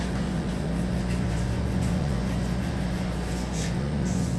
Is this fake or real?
fake